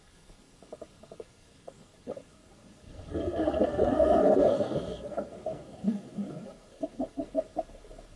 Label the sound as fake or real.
fake